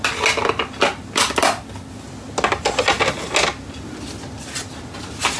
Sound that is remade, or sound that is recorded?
recorded